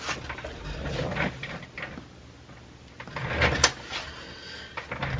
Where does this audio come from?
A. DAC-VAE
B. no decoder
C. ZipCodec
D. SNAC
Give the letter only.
B